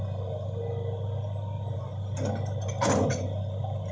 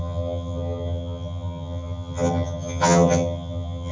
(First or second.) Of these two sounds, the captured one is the first